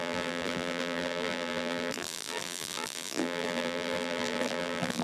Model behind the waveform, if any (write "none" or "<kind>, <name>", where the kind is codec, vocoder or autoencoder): vocoder, BigVGAN v2